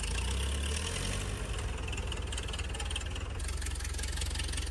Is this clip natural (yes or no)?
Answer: yes